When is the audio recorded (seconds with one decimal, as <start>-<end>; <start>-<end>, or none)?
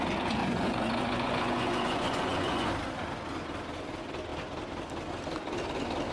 0.0-0.4; 2.7-6.1